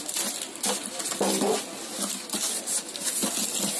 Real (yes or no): yes